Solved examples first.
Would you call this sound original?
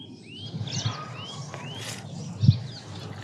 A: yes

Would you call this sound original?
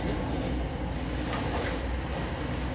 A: yes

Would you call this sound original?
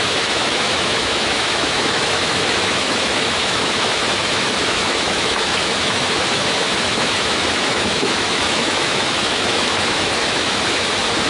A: no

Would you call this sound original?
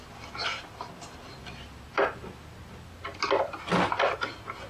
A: yes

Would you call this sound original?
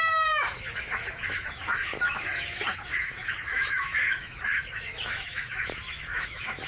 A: no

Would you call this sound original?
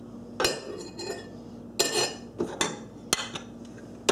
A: yes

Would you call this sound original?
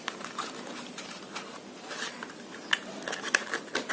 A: yes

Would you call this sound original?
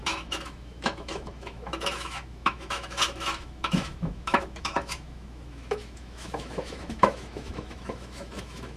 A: no